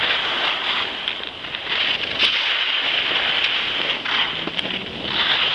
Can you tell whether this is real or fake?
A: real